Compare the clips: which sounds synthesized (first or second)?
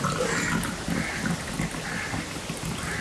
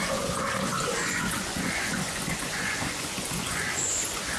second